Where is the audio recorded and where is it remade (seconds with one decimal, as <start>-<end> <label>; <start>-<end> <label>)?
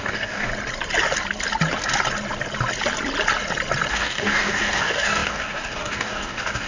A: 0.0-0.5 remade; 0.5-3.9 recorded; 3.9-6.7 remade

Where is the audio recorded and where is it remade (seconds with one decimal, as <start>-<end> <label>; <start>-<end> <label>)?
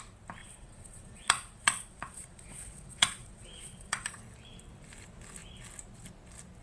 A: 0.0-0.4 recorded; 0.4-4.2 remade; 4.2-6.6 recorded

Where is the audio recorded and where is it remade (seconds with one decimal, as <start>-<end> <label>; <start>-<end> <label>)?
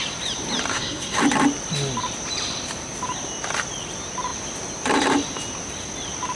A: 0.0-0.7 recorded; 0.7-1.2 remade; 1.2-6.4 recorded